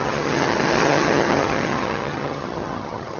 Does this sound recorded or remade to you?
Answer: remade